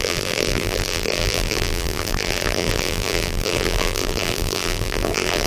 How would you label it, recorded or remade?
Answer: remade